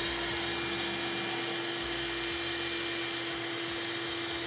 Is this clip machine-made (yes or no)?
no